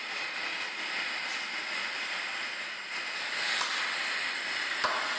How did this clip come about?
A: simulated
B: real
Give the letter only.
B